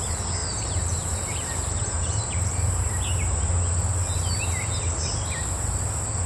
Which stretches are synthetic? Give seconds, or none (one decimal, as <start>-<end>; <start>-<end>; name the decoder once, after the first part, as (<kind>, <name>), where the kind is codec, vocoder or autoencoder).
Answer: 0.4-2.9 (vocoder, BigVGAN v2)